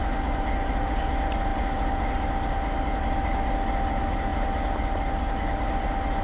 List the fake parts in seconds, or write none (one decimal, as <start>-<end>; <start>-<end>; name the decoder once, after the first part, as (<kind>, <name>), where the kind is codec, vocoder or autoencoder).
none